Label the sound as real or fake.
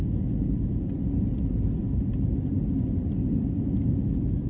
real